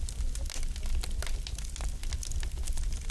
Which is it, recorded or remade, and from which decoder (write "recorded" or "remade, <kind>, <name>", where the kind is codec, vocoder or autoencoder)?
recorded